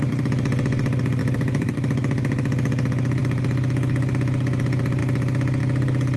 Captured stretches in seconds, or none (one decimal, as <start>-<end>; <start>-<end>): 0.0-1.2; 1.7-6.2